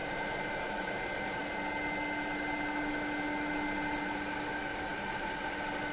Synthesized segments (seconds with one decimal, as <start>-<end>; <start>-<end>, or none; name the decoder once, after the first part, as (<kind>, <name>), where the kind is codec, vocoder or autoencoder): none